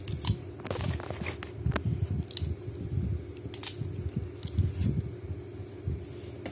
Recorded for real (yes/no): yes